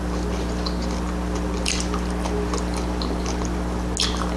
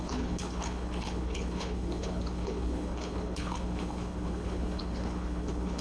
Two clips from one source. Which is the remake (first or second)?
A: second